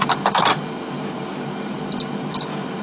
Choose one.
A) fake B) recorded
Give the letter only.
B